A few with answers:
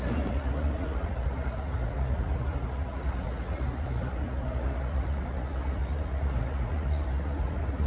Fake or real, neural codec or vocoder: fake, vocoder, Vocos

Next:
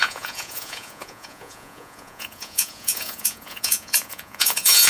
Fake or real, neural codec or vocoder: fake, vocoder, Vocos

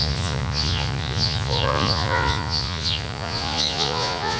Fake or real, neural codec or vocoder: fake, vocoder, Vocos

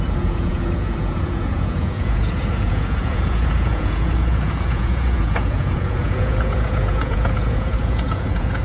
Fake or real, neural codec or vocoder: fake, vocoder, Vocos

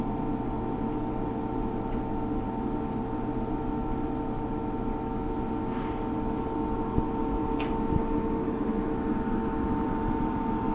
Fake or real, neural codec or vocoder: real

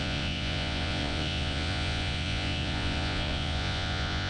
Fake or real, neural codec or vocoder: fake, vocoder, Vocos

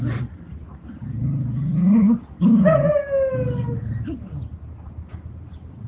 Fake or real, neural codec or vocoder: real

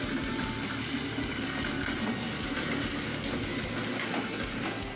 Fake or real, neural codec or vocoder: real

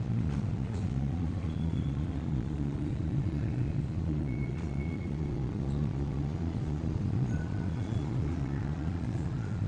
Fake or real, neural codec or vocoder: fake, vocoder, Vocos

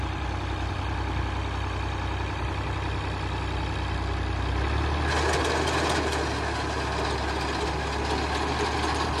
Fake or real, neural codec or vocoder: real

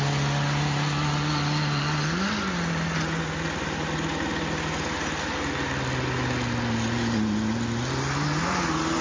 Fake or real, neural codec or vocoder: real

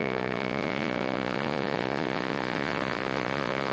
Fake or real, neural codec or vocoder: fake, vocoder, Vocos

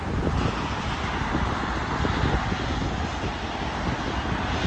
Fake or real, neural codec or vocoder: real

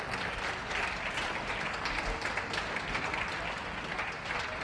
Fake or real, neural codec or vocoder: real